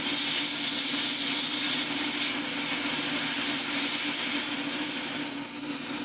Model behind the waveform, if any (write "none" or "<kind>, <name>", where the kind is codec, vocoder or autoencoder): none